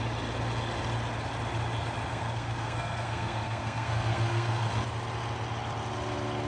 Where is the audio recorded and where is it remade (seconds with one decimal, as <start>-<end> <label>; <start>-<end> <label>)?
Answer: 0.0-2.1 recorded; 2.1-4.7 remade; 4.7-6.5 recorded